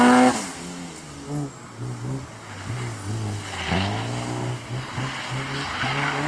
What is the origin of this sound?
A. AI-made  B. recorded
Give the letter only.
B